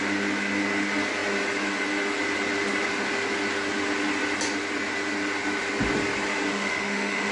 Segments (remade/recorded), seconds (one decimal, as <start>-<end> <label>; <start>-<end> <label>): 0.0-6.5 recorded; 6.5-7.3 remade

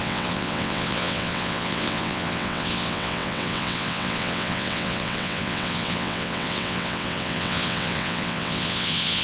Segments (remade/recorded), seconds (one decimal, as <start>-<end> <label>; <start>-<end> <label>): 0.0-9.2 remade

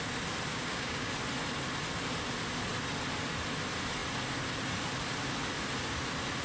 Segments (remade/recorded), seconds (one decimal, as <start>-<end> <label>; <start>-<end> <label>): 0.0-0.5 recorded; 0.5-1.1 remade; 1.1-6.4 recorded

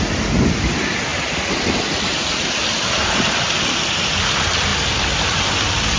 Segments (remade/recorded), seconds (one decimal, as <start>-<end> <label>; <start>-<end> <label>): 0.0-6.0 recorded

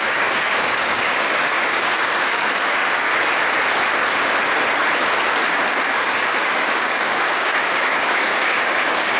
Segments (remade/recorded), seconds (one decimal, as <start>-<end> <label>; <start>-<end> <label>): 0.0-3.1 remade; 3.1-5.5 recorded; 5.5-9.2 remade

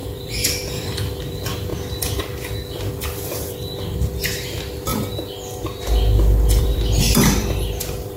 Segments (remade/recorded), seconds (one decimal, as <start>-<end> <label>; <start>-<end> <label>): 0.0-1.7 remade; 1.7-2.9 recorded; 2.9-4.9 remade; 4.9-6.6 recorded; 6.6-8.2 remade